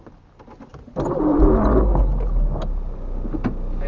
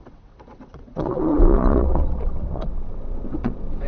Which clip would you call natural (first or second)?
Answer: first